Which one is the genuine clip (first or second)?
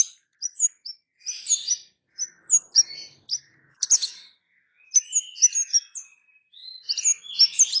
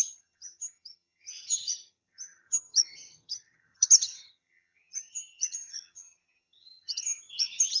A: first